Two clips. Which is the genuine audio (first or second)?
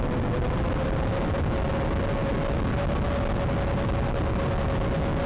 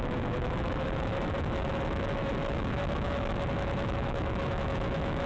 first